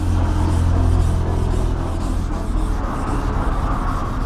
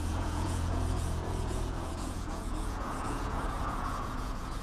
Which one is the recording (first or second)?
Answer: first